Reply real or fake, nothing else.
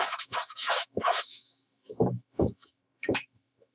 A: fake